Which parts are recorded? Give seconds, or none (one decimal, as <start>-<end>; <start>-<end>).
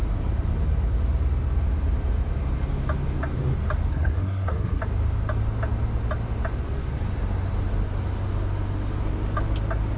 0.0-3.9; 4.8-10.0